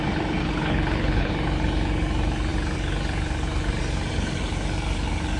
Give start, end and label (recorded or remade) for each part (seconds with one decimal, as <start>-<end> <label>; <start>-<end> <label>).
0.0-0.4 recorded; 0.4-1.3 remade; 1.3-5.4 recorded